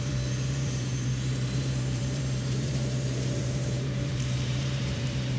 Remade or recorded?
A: remade